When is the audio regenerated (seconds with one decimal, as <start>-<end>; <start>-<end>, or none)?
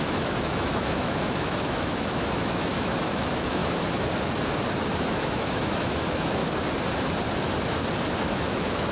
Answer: 0.0-3.6; 5.0-6.4; 8.2-8.9